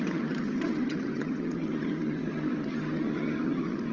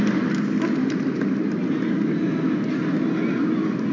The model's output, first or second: first